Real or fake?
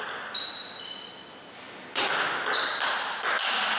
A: real